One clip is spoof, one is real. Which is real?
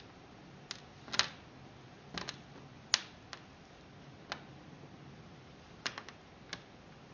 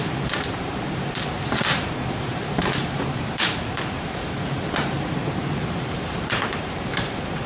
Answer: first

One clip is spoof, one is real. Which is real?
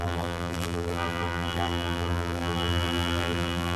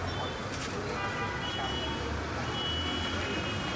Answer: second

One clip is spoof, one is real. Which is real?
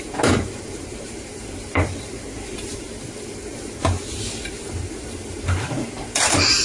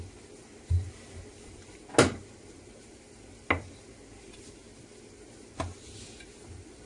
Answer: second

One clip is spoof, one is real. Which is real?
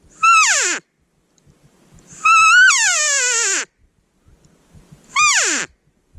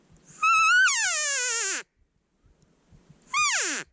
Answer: second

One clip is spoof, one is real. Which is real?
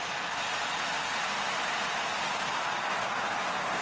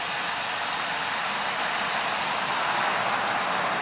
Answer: first